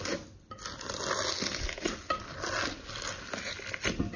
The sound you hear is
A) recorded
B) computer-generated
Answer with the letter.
A